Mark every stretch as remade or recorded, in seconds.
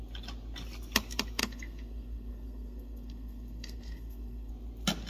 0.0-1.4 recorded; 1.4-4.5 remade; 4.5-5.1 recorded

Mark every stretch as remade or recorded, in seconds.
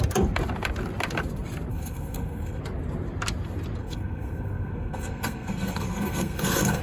0.0-1.7 recorded; 1.7-2.6 remade; 2.6-3.8 recorded; 3.8-6.8 remade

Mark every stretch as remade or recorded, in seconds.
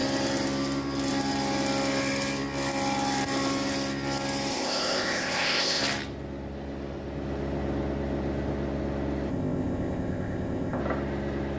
0.0-4.5 recorded; 4.5-5.8 remade; 5.8-9.3 recorded; 9.3-10.8 remade; 10.8-11.6 recorded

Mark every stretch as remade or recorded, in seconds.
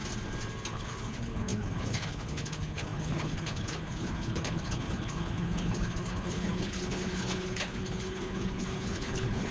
0.0-0.7 recorded; 0.7-9.5 remade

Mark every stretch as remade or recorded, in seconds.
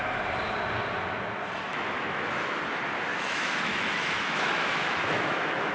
0.0-1.7 recorded; 1.7-2.6 remade; 2.6-3.1 recorded; 3.1-5.7 remade